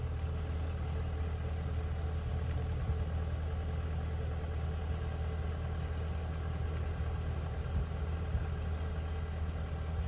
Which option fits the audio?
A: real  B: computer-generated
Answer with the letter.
A